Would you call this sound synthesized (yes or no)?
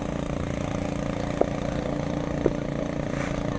no